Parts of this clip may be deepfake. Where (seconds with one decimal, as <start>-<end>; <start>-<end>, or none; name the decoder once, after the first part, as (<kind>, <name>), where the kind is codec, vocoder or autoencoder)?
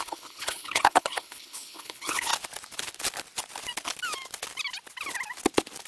0.0-2.3 (codec, HILCodec)